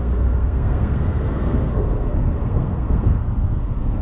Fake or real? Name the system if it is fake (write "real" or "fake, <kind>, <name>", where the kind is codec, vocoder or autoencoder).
fake, codec, SNAC